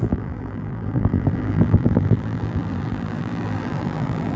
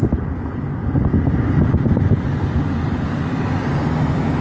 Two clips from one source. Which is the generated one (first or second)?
first